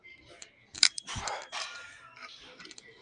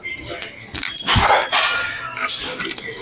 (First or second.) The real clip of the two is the second